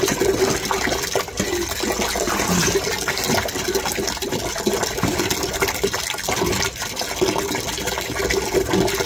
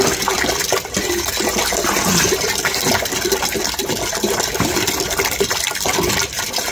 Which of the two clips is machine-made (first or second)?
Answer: second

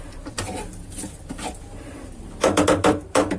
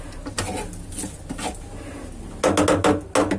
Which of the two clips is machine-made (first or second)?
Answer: first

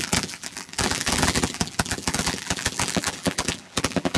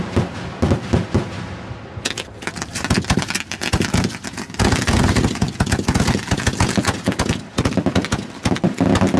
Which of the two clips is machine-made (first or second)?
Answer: first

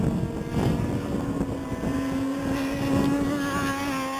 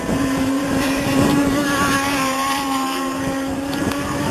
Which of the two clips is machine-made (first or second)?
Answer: second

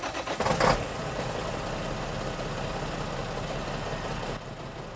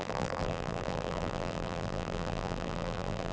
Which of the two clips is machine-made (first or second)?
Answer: second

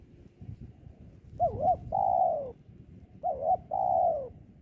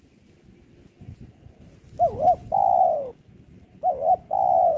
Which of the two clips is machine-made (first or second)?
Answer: first